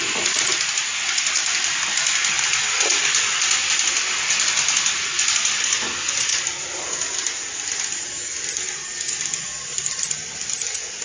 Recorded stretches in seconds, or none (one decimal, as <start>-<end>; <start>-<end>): 0.0-11.0